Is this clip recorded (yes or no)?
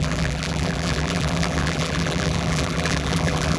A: no